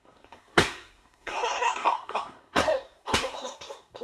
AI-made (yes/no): yes